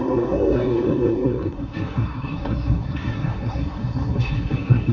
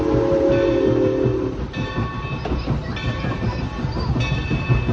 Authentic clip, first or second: second